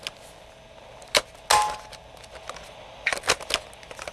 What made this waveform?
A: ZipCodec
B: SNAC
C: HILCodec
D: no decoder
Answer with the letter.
D